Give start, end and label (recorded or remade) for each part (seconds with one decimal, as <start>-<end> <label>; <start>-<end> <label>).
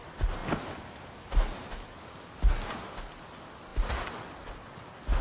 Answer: 0.0-5.2 recorded